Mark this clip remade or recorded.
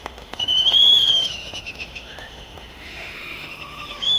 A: remade